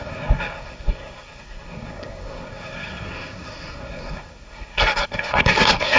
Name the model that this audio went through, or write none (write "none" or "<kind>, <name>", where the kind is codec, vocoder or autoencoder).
codec, SNAC